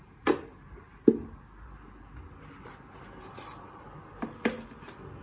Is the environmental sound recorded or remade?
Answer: recorded